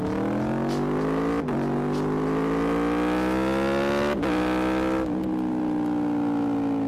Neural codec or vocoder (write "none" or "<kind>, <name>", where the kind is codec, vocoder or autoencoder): none